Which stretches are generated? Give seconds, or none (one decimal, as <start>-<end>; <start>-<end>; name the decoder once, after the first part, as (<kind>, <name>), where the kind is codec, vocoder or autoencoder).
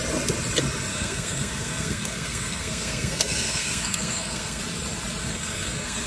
0.9-4.6 (codec, SNAC); 5.2-6.1